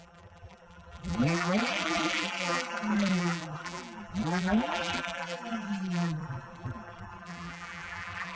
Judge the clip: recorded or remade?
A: remade